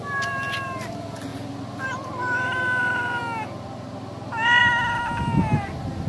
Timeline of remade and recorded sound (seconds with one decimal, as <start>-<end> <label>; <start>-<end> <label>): 0.0-6.1 recorded